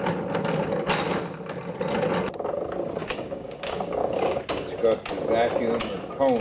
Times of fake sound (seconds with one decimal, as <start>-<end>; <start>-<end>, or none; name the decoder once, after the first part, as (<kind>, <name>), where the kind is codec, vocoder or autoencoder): 3.0-4.4 (codec, DAC)